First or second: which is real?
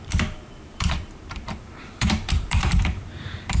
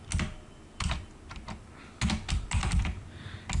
second